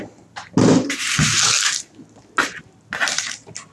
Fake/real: real